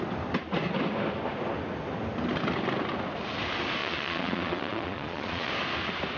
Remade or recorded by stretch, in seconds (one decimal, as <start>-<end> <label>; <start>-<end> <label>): 0.0-3.8 recorded; 3.8-5.5 remade; 5.5-6.2 recorded